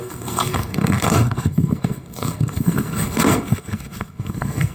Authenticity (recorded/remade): remade